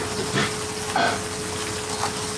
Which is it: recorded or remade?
recorded